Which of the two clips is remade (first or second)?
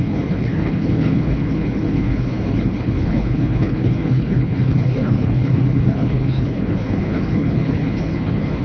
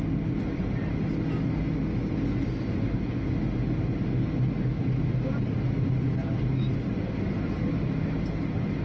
first